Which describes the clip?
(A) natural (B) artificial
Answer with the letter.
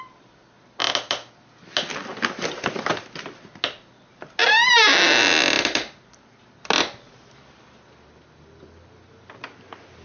A